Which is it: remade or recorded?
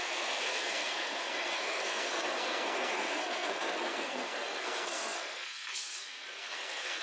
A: remade